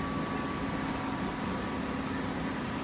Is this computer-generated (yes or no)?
no